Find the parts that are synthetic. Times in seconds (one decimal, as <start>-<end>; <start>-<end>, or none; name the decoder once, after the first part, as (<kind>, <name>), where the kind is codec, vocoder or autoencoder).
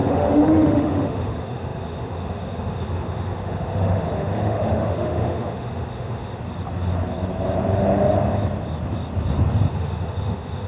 0.0-6.4 (autoencoder, DAC-VAE); 9.7-10.7